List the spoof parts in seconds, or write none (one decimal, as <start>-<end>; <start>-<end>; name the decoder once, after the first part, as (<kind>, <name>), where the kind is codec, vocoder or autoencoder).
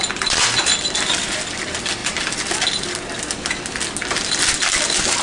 0.6-1.2 (vocoder, BigVGAN v2)